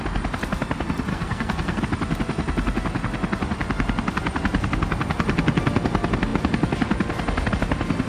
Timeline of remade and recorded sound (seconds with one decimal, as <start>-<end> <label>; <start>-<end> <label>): 0.0-1.1 recorded; 1.1-1.8 remade; 1.8-8.1 recorded